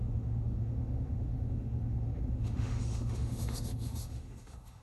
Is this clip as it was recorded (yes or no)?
no